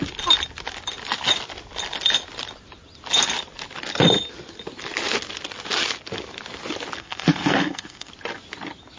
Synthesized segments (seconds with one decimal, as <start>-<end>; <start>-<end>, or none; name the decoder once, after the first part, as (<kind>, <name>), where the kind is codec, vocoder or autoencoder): 7.0-8.1 (codec, SNAC)